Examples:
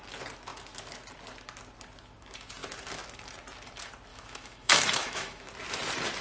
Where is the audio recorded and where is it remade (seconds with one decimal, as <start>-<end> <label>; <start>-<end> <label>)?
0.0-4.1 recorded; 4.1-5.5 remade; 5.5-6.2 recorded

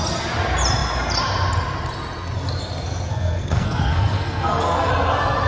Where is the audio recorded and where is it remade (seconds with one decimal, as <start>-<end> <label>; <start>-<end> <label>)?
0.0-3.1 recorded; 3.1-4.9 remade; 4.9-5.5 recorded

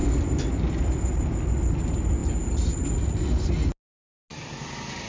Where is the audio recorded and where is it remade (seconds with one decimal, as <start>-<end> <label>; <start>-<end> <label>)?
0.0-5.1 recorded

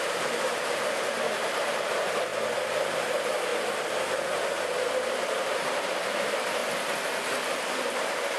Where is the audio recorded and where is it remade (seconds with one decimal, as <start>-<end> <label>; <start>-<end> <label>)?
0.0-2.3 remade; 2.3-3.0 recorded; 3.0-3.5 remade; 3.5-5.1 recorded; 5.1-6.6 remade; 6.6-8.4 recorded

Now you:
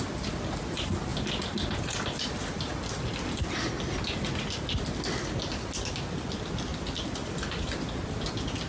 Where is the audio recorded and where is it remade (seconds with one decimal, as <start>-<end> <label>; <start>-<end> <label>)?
0.0-6.7 recorded; 6.7-7.9 remade; 7.9-8.7 recorded

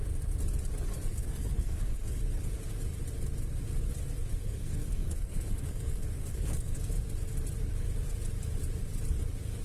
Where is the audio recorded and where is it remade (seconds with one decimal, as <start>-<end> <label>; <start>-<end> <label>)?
0.0-1.1 recorded; 1.1-2.2 remade; 2.2-4.4 recorded; 4.4-7.0 remade; 7.0-9.6 recorded

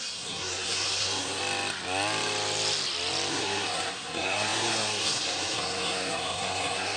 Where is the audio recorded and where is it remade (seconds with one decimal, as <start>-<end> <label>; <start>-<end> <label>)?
0.0-1.4 remade; 1.4-3.3 recorded; 3.3-7.0 remade